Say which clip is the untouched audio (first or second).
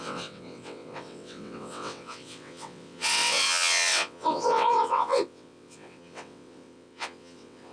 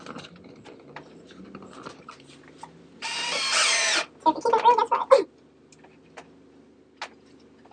second